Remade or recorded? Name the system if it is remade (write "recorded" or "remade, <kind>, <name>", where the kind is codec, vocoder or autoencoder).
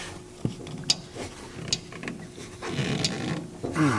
recorded